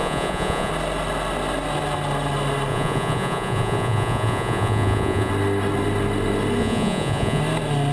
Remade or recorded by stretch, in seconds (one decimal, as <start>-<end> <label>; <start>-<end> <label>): 0.0-0.7 remade; 0.7-2.7 recorded; 2.7-5.3 remade; 5.3-6.6 recorded; 6.6-7.4 remade; 7.4-7.9 recorded